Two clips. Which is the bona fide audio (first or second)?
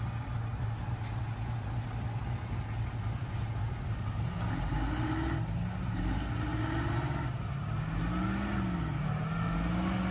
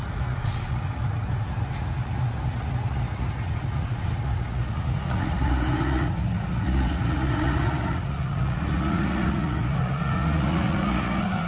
first